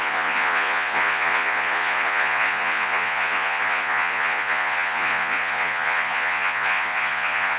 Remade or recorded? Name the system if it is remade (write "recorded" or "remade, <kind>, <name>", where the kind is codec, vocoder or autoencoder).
remade, vocoder, Vocos